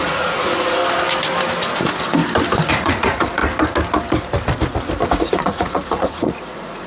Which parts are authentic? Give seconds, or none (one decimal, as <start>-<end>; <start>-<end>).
0.8-1.8; 2.2-2.7; 3.4-5.2